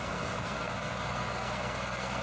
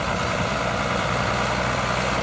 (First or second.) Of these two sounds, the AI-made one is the first